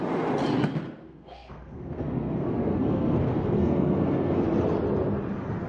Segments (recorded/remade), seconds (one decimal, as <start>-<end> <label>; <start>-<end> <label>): 0.0-1.0 recorded; 1.0-4.4 remade; 4.4-5.7 recorded